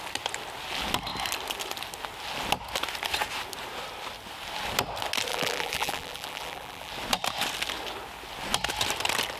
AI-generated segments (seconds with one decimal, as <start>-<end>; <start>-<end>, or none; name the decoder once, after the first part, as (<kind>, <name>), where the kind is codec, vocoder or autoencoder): 5.3-6.9 (vocoder, BigVGAN v2)